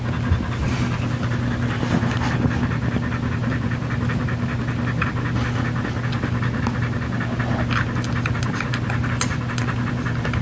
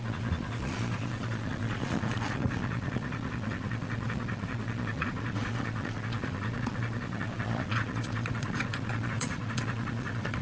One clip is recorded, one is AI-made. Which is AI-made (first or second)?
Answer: second